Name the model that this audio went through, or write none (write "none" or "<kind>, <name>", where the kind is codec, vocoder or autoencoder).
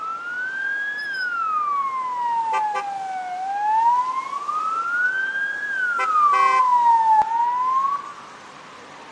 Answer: none